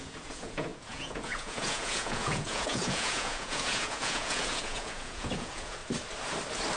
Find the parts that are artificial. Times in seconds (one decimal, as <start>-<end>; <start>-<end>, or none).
0.0-5.8